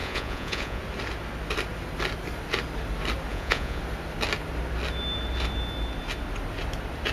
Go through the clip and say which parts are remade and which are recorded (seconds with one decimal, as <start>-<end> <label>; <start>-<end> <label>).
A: 0.0-0.8 remade; 0.8-3.3 recorded; 3.3-3.8 remade; 3.8-7.1 recorded